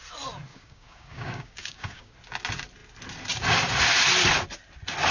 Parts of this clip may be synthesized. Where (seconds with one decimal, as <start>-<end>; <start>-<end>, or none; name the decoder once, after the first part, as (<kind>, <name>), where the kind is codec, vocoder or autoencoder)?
0.5-2.1 (codec, DAC)